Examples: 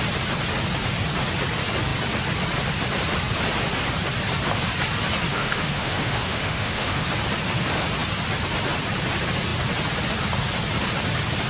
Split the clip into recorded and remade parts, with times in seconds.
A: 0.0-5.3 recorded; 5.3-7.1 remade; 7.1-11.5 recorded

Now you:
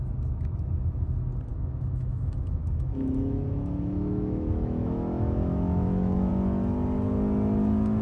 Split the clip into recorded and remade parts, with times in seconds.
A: 0.0-1.5 recorded; 1.5-6.3 remade; 6.3-8.0 recorded